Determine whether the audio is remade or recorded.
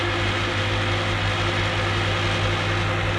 recorded